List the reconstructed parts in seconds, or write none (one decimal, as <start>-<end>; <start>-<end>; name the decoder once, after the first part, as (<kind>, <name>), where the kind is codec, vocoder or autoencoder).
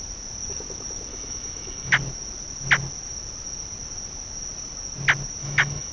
1.1-2.0 (autoencoder, DAC-VAE); 5.4-5.9